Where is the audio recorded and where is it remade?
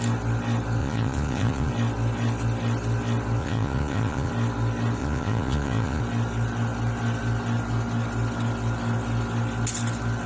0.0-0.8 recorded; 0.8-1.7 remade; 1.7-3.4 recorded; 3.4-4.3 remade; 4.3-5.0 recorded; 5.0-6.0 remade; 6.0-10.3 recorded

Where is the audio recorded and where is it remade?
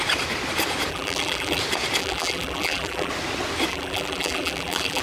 0.0-0.9 recorded; 0.9-1.6 remade; 1.6-2.0 recorded; 2.0-3.1 remade; 3.1-3.7 recorded; 3.7-5.0 remade